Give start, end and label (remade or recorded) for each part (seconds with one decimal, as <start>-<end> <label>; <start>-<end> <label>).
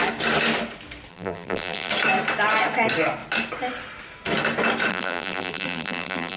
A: 0.0-1.1 recorded; 1.1-1.9 remade; 1.9-4.9 recorded; 4.9-6.4 remade